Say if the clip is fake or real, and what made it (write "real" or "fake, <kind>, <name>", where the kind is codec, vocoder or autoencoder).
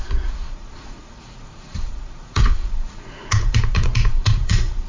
fake, vocoder, Vocos